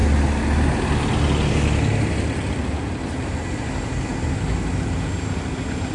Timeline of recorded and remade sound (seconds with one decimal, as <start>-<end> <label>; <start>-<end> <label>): 0.0-5.9 recorded